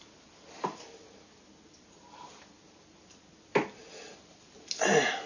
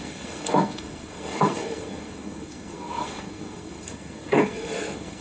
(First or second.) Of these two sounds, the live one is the first